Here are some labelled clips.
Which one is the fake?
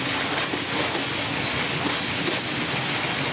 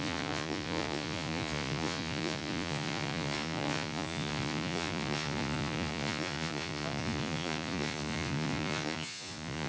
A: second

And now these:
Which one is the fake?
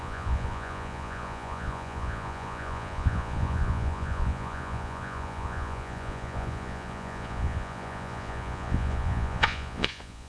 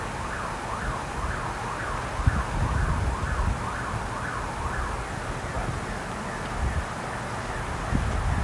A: first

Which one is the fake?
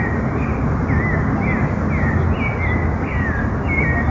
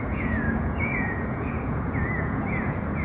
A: second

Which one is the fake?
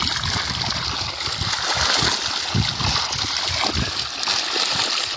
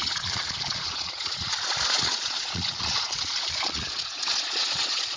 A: second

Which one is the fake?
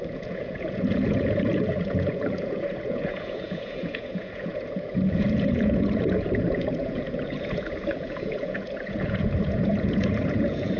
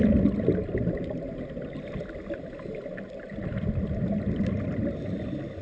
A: first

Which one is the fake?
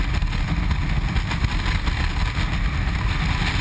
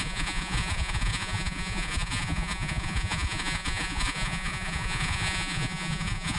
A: second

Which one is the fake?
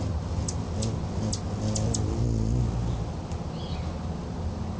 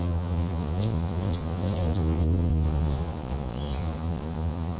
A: second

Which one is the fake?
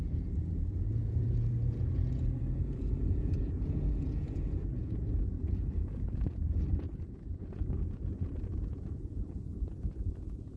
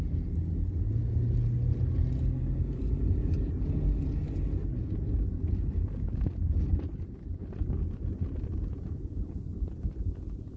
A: first